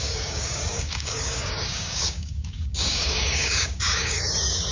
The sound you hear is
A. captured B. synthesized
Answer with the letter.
B